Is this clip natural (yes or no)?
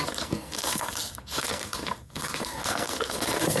no